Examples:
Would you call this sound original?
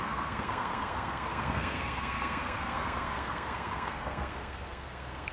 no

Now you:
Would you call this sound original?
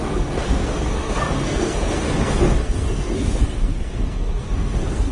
no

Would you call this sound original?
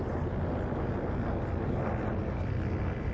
yes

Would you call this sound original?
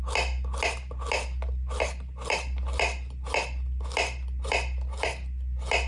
yes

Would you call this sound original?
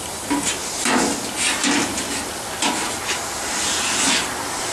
yes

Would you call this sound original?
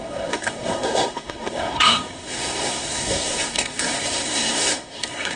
no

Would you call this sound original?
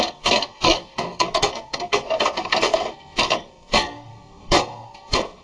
no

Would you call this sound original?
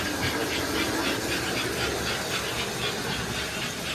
yes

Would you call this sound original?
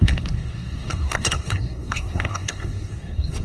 no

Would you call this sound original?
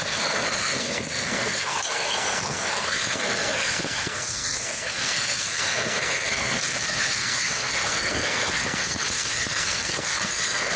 no